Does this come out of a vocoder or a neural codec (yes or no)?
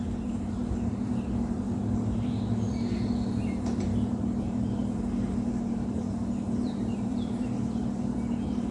yes